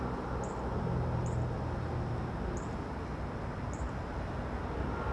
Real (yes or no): yes